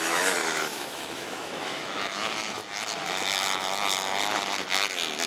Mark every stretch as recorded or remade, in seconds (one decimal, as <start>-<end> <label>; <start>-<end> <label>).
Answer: 0.0-2.6 remade; 2.6-5.3 recorded